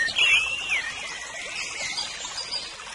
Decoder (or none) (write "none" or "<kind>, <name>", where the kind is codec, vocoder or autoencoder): none